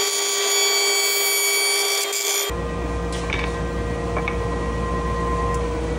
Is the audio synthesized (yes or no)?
no